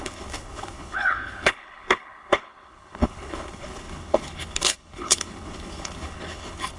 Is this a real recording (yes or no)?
no